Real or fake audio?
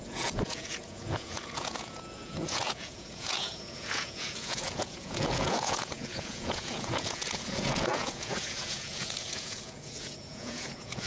fake